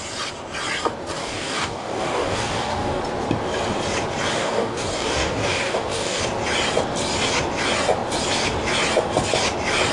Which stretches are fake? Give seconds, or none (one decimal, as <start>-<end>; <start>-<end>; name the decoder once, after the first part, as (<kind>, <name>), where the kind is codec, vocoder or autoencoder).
1.2-3.0 (codec, DAC); 4.3-6.2